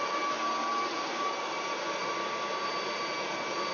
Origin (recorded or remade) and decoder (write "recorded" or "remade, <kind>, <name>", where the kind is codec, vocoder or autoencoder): recorded